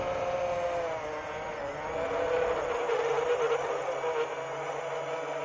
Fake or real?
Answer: real